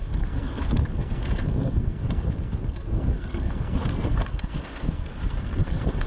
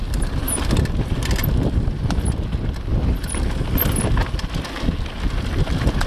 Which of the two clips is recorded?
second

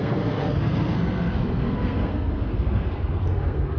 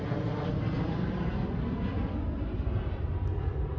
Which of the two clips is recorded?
second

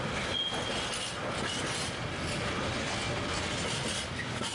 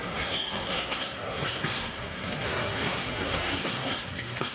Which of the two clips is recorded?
first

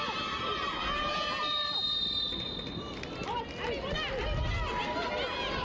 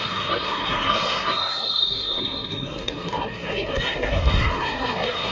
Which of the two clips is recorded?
first